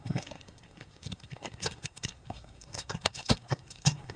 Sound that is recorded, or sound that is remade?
remade